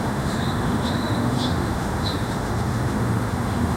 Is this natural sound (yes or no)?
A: no